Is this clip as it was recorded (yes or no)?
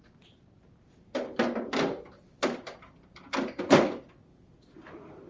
no